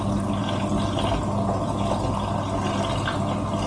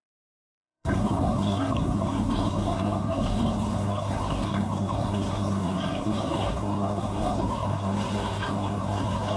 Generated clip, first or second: second